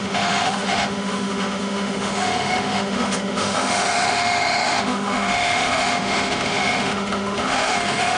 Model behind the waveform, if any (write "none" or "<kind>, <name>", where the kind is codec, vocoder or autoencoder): autoencoder, DAC-VAE